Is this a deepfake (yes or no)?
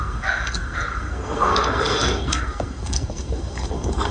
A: yes